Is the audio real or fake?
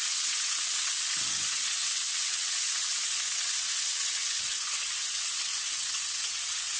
fake